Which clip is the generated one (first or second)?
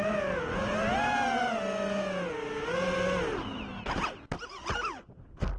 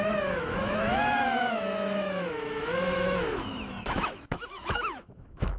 second